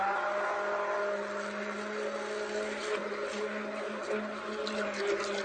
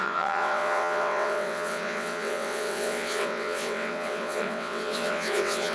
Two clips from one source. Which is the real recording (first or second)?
first